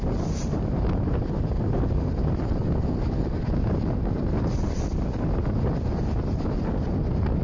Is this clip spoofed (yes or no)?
no